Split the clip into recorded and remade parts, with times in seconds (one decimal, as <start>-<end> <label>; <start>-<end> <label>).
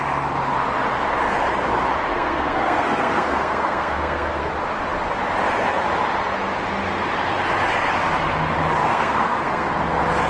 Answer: 0.0-2.1 recorded; 2.1-4.5 remade; 4.5-8.8 recorded; 8.8-9.7 remade; 9.7-10.3 recorded